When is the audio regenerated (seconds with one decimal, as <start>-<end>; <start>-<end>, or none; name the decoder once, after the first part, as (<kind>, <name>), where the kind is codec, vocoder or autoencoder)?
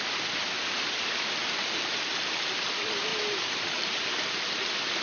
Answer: 1.4-2.1 (vocoder, BigVGAN v2); 3.1-4.4